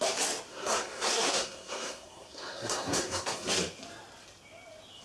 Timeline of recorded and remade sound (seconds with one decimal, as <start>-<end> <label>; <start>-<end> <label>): 0.0-0.5 recorded; 0.5-3.5 remade; 3.5-5.0 recorded